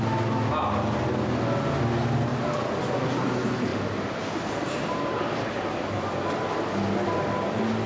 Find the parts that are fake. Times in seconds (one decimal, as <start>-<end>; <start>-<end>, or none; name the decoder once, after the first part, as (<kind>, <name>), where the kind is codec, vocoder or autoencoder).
2.3-2.8 (vocoder, BigVGAN v2); 3.7-6.5